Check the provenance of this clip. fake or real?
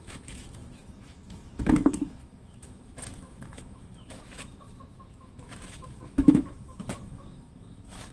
fake